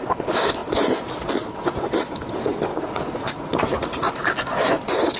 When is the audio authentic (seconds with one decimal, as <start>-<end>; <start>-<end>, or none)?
0.0-2.7; 4.1-5.2